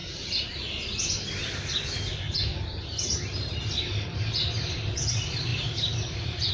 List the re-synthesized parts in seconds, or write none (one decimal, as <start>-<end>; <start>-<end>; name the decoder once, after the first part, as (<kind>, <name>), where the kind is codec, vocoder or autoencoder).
2.6-6.5 (vocoder, BigVGAN v2)